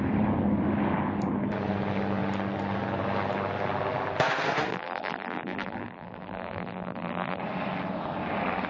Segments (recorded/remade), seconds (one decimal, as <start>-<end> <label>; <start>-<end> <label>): 0.0-4.7 recorded; 4.7-7.4 remade; 7.4-8.7 recorded